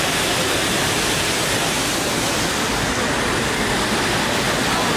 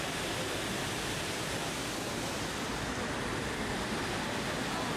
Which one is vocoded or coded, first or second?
second